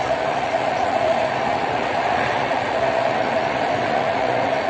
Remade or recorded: remade